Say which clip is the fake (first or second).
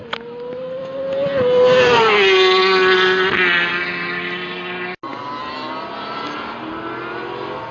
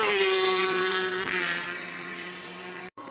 second